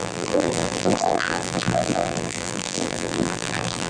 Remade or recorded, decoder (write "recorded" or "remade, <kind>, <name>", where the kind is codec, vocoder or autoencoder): remade, vocoder, BigVGAN v2